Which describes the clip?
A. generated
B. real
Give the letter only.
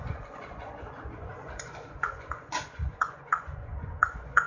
A